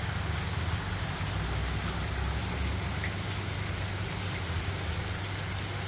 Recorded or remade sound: recorded